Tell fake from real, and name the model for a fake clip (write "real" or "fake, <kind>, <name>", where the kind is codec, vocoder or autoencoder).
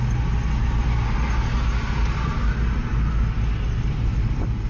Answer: real